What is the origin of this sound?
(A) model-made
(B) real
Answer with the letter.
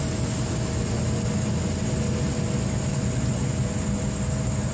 B